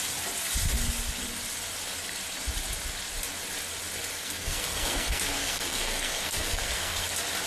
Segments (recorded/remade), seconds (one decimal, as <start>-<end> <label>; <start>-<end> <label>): 0.0-4.1 recorded; 4.1-7.1 remade; 7.1-7.5 recorded